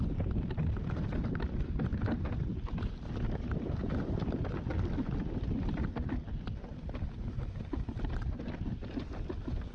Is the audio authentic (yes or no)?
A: yes